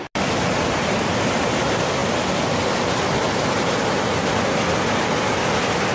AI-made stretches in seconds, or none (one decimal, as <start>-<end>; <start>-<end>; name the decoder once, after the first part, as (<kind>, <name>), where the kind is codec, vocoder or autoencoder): none